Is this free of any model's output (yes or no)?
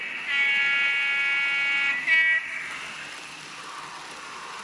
yes